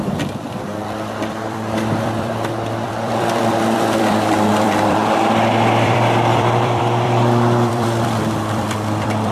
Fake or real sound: fake